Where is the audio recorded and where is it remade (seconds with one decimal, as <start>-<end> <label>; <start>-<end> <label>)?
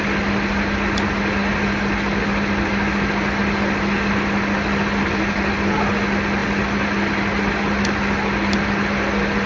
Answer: 0.0-9.5 recorded